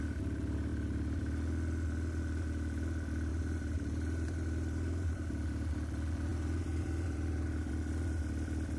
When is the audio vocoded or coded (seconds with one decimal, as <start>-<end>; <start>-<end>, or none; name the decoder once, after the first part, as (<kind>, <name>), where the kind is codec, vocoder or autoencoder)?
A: 3.3-5.3 (vocoder, BigVGAN v2); 6.3-7.7